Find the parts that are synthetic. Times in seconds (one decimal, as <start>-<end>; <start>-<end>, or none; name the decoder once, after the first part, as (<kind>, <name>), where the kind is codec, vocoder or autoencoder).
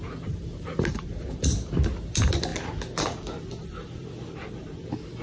none